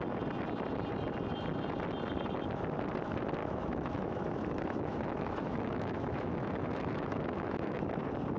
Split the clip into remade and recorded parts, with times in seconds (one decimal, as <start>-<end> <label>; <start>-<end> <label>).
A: 0.0-3.4 recorded; 3.4-7.8 remade; 7.8-8.4 recorded